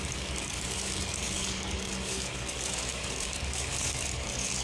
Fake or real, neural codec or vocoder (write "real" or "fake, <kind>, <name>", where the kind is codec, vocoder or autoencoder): fake, codec, DAC